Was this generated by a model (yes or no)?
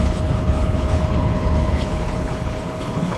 yes